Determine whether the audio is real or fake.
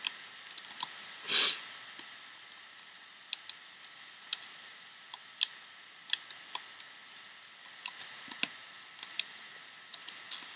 real